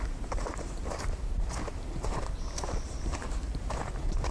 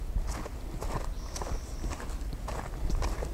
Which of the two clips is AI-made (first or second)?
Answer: first